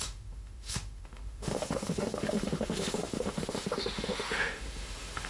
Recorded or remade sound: remade